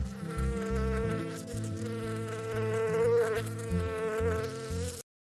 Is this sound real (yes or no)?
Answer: yes